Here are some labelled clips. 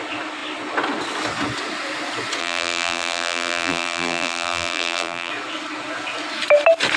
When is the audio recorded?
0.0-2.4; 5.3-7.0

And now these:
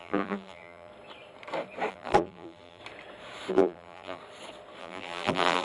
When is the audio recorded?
0.9-1.9; 2.8-3.5; 4.2-4.8

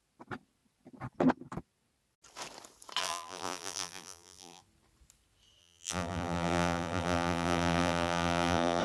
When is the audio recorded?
0.0-3.0; 4.6-5.6

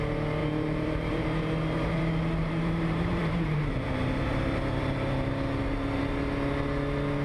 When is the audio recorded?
0.0-0.4; 2.0-2.4; 5.3-7.2